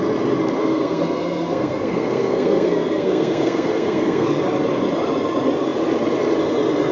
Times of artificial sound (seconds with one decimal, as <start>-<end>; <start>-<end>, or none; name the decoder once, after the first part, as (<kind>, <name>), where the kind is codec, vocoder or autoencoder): 0.6-4.4 (codec, SNAC)